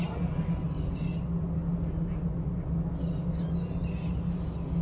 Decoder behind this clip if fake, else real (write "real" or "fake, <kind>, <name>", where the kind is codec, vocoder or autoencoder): real